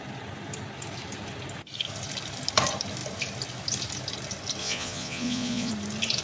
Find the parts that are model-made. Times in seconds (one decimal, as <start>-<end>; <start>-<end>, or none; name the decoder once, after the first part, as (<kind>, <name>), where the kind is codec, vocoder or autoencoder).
4.6-5.7 (vocoder, Vocos)